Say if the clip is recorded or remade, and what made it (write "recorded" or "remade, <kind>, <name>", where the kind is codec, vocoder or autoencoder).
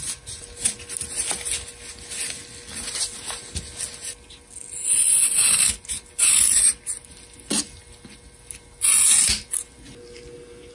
recorded